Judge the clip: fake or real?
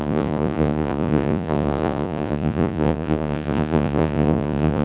fake